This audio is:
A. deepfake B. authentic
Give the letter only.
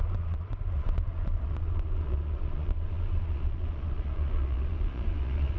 A